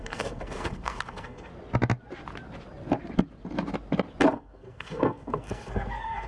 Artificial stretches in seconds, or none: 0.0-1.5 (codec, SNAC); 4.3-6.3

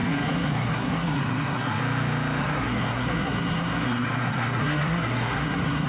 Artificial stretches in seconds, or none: 0.0-1.8 (codec, SNAC); 2.4-5.9